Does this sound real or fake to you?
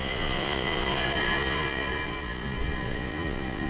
fake